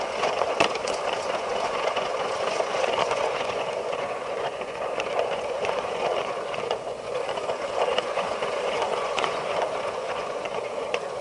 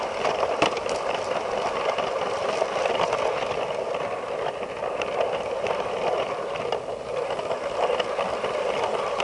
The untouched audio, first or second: second